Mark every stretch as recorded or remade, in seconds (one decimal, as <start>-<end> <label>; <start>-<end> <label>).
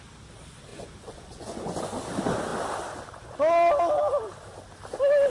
0.0-0.7 recorded; 0.7-1.8 remade; 1.8-5.3 recorded